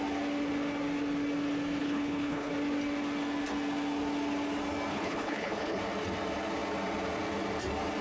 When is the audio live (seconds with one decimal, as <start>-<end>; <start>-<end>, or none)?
0.0-1.8; 2.5-4.9; 5.8-8.0